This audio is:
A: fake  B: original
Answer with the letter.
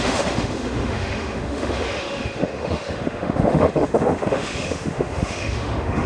A